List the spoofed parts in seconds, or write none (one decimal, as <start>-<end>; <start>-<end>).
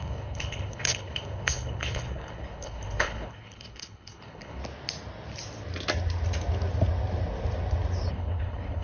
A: 0.0-4.6; 8.1-8.8